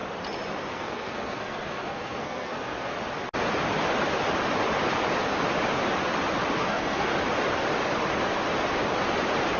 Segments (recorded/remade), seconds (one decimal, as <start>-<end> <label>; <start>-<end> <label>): 0.0-0.7 recorded; 0.7-2.9 remade; 2.9-6.6 recorded; 6.6-7.1 remade; 7.1-9.6 recorded